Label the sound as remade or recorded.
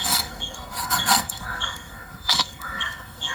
remade